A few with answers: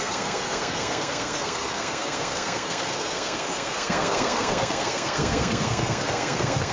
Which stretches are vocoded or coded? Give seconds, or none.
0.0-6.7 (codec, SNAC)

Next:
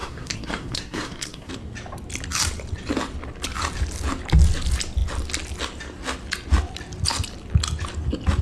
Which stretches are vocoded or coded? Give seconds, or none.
0.0-1.5 (codec, SNAC)

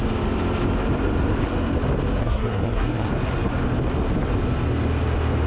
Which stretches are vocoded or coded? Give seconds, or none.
2.2-3.1 (codec, SNAC)

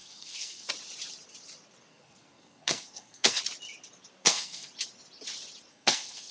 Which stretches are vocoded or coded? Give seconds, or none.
0.0-0.7 (codec, SNAC); 1.9-3.4; 4.2-4.7; 5.7-6.3

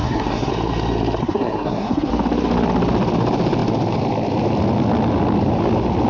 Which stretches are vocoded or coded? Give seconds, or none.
0.0-0.5 (codec, SNAC); 1.2-2.1

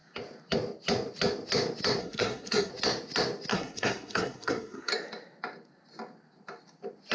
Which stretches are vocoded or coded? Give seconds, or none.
2.0-2.7 (codec, SNAC); 3.5-4.9

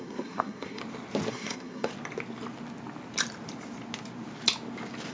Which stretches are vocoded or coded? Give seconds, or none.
0.0-0.8 (codec, SNAC); 1.3-1.9